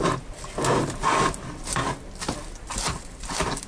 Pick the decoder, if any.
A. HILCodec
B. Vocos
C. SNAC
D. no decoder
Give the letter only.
D